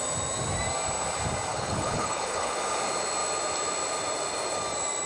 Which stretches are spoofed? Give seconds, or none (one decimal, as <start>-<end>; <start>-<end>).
1.5-2.6